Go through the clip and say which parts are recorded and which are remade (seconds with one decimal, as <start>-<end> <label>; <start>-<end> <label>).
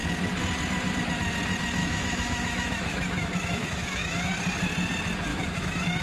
0.0-1.8 recorded; 1.8-4.3 remade; 4.3-5.3 recorded; 5.3-6.0 remade